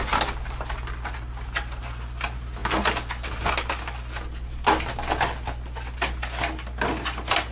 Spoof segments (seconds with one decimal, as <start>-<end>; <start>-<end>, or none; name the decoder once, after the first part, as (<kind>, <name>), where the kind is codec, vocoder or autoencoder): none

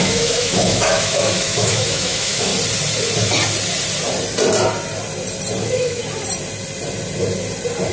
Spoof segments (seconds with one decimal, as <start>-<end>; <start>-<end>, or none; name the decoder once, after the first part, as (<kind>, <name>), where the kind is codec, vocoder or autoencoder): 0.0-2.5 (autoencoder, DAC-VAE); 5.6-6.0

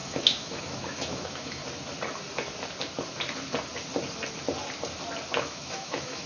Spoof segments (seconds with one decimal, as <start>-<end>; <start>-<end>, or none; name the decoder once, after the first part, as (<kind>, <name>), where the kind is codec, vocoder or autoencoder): 0.0-1.6 (autoencoder, DAC-VAE); 5.4-6.3